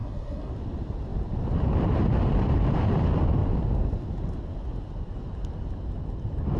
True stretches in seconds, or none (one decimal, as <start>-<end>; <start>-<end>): 0.5-6.6